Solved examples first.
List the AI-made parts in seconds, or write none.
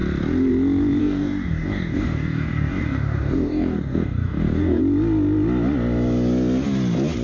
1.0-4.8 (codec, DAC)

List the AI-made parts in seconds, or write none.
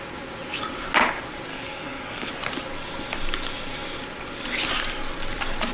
1.5-2.3 (codec, DAC)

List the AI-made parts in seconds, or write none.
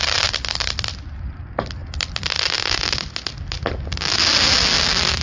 none